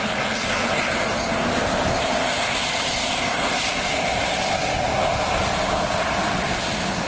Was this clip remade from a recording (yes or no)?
no